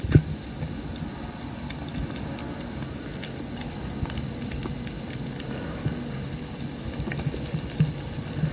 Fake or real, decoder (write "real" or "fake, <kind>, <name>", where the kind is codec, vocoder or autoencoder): real